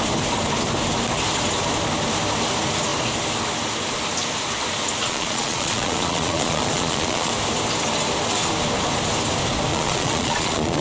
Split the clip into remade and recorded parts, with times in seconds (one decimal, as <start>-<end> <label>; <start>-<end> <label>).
0.0-5.0 recorded; 5.0-7.3 remade; 7.3-9.7 recorded; 9.7-10.8 remade